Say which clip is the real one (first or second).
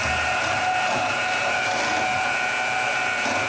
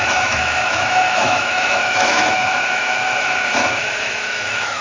first